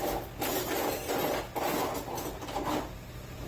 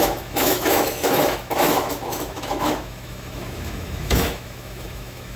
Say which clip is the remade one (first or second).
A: second